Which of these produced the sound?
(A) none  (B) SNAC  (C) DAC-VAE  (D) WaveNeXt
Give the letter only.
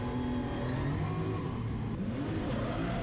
A